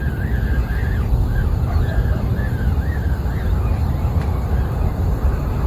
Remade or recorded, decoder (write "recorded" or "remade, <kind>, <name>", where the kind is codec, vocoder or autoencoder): recorded